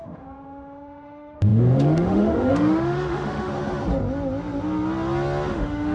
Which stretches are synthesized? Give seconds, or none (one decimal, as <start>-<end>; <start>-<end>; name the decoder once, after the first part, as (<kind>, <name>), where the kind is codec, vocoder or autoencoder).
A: 0.0-3.5 (autoencoder, DAC-VAE); 5.5-5.9

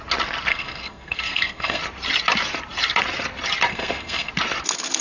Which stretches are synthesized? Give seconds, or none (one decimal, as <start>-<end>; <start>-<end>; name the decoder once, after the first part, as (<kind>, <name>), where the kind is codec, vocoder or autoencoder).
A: 0.5-1.8 (codec, SNAC); 3.7-4.3

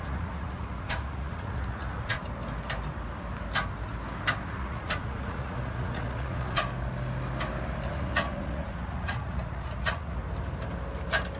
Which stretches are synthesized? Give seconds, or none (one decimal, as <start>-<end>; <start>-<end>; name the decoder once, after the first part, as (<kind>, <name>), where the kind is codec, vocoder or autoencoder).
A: 0.0-2.2 (vocoder, Vocos); 4.4-6.6; 7.9-10.2